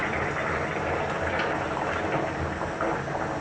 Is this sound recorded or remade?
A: recorded